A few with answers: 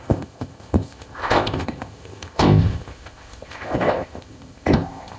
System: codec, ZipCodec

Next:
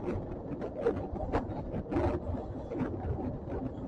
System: none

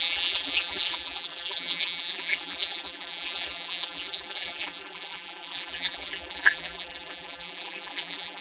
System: vocoder, BigVGAN v2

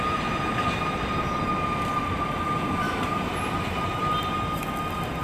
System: none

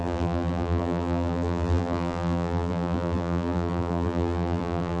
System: vocoder, BigVGAN v2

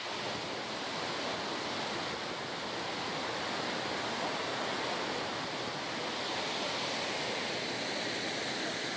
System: none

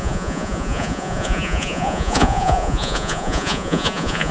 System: vocoder, Vocos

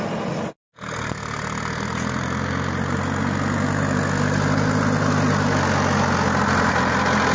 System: none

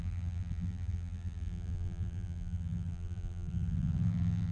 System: vocoder, BigVGAN v2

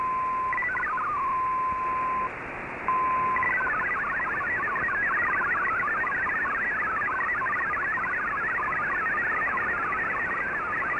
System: none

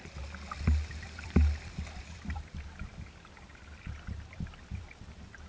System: vocoder, BigVGAN v2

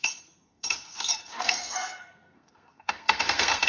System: codec, SNAC